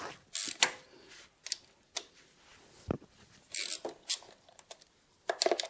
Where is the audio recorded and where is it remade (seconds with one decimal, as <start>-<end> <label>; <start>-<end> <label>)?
0.0-5.7 recorded